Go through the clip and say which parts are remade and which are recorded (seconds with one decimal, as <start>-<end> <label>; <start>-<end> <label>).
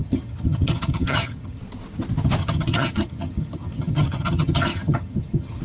0.0-1.6 remade; 1.6-2.4 recorded; 2.4-5.6 remade